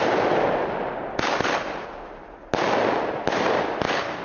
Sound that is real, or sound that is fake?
real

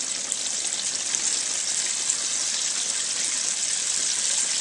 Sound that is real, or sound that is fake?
real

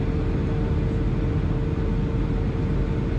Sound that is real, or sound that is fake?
real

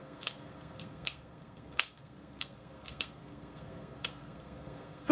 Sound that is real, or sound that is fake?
fake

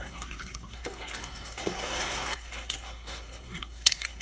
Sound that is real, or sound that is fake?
fake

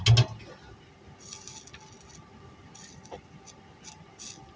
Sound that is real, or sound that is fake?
real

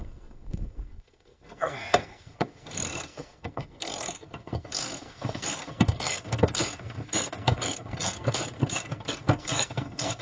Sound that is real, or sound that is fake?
fake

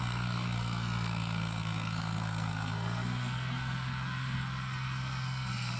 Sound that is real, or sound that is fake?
fake